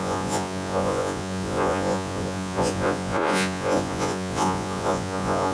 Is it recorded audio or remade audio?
remade